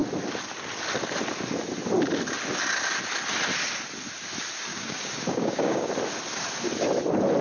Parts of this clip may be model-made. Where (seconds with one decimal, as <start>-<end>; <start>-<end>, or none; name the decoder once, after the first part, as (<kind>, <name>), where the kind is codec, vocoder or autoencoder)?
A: 4.7-5.9 (codec, DAC)